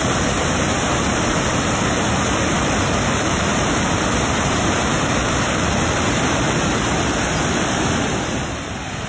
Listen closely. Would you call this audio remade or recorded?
remade